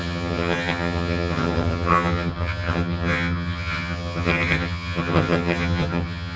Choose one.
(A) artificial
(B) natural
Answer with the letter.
A